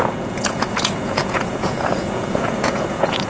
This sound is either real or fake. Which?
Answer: fake